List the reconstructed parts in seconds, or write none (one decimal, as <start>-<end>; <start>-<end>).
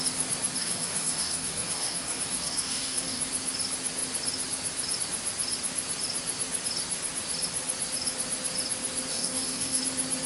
0.6-3.2; 9.1-9.8